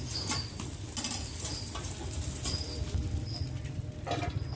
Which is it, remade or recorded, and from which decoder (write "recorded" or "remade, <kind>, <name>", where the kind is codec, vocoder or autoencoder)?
recorded